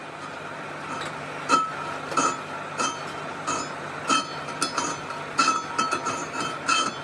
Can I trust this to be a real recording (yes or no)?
yes